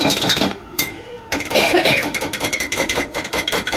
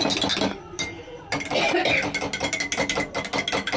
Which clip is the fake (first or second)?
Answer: first